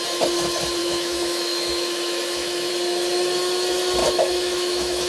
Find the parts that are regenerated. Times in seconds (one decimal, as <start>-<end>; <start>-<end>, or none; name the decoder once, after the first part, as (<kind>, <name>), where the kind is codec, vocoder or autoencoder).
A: 0.8-2.7 (autoencoder, DAC-VAE); 4.0-5.1